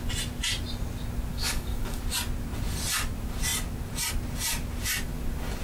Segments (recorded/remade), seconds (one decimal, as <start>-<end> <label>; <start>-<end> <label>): 0.0-1.3 recorded; 1.3-2.0 remade; 2.0-5.6 recorded